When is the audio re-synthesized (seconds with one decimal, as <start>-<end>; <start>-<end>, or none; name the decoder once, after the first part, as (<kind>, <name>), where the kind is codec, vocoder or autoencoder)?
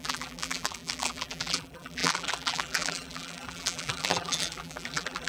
0.0-5.3 (vocoder, BigVGAN v2)